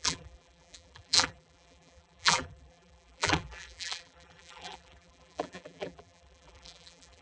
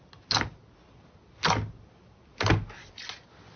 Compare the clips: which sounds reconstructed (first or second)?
first